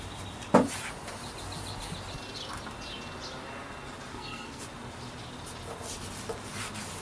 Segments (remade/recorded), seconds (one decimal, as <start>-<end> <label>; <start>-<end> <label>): 0.0-4.1 recorded; 4.1-4.6 remade; 4.6-7.0 recorded